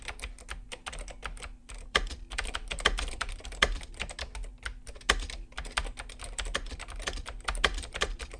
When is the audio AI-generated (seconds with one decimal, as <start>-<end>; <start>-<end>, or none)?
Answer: 1.6-3.3; 7.7-8.4